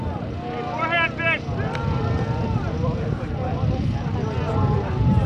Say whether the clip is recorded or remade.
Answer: recorded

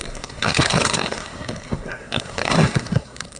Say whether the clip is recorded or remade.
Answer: remade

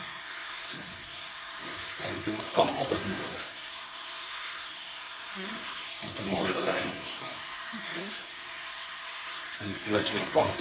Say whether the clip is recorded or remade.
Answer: remade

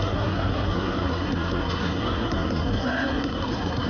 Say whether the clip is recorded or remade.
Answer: remade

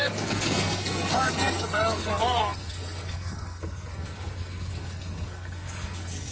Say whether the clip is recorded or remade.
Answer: remade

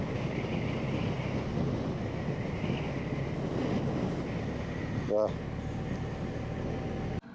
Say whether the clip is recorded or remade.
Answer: recorded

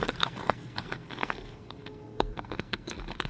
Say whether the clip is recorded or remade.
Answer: remade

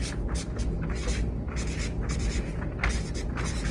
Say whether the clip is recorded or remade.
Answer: recorded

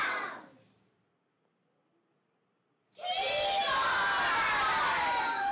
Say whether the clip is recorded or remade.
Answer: recorded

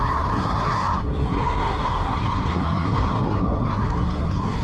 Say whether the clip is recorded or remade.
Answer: remade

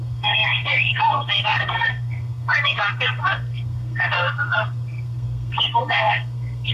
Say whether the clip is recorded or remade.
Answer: remade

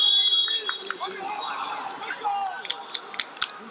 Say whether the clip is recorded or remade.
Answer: recorded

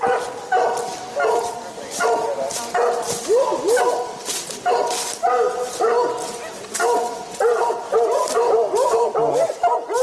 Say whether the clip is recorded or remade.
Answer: recorded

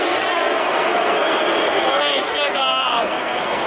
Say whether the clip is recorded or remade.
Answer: remade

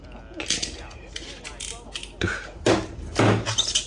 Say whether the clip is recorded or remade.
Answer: recorded